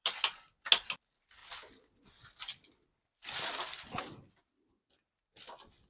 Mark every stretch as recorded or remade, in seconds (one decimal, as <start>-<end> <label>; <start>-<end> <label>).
0.0-5.9 recorded